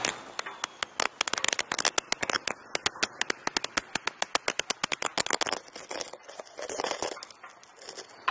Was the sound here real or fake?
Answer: real